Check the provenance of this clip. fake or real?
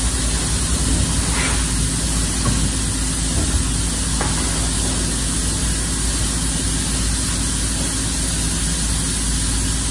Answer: real